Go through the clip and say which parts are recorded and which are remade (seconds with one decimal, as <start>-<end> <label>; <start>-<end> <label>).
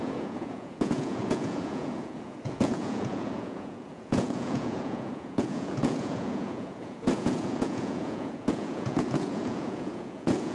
0.0-10.5 remade